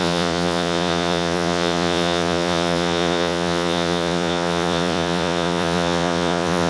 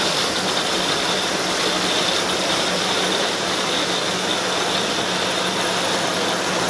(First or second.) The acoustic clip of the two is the second